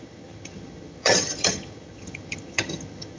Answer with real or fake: fake